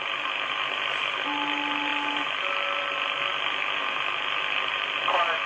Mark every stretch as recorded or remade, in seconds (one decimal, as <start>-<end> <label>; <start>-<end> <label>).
0.0-5.5 recorded